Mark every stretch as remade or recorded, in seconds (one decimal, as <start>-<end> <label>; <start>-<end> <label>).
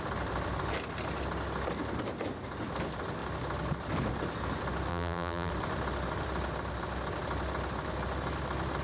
0.0-4.9 recorded; 4.9-5.5 remade; 5.5-8.8 recorded